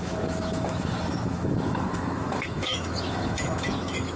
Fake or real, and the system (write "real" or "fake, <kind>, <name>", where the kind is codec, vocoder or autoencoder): fake, autoencoder, DAC-VAE